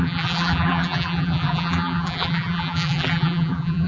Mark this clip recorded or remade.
remade